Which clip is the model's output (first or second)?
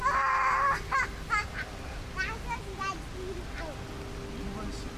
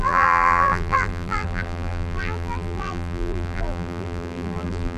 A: second